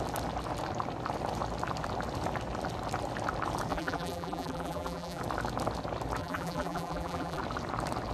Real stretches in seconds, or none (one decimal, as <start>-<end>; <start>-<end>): 0.0-3.7; 5.2-6.2; 7.4-8.1